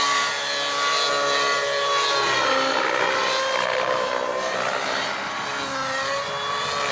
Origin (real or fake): real